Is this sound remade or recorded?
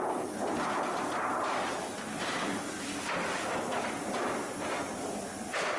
recorded